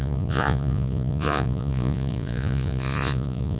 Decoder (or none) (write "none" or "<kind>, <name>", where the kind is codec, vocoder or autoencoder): vocoder, Vocos